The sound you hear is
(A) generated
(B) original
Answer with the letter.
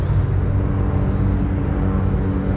B